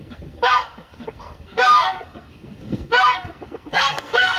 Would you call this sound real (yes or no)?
no